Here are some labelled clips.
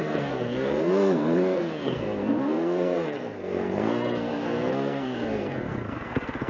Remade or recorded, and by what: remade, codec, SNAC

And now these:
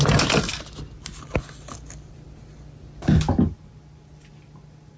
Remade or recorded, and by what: recorded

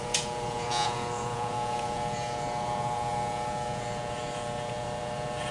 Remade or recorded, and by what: remade, vocoder, Vocos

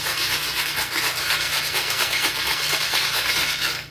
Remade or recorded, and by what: remade, codec, SNAC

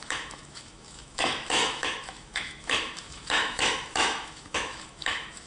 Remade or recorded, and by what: remade, autoencoder, DAC-VAE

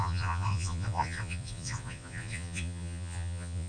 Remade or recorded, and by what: remade, vocoder, Vocos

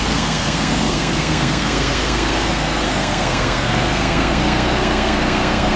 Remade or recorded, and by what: remade, codec, SNAC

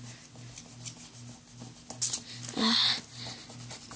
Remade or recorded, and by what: recorded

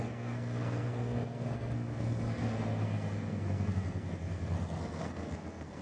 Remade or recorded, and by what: remade, codec, SNAC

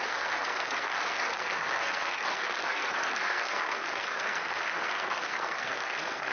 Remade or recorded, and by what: remade, codec, SNAC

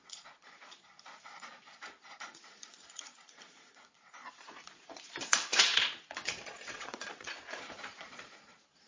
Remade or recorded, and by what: remade, vocoder, Vocos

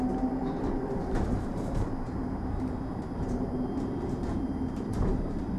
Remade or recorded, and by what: remade, vocoder, BigVGAN v2